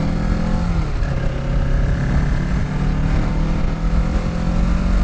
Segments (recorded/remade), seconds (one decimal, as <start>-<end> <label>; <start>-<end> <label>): 0.0-5.0 recorded